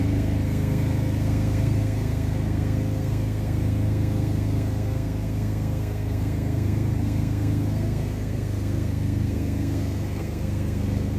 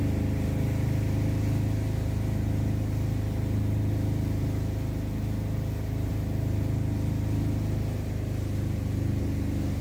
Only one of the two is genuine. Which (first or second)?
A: second